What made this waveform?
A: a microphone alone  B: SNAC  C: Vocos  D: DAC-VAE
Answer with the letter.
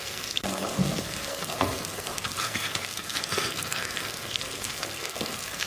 B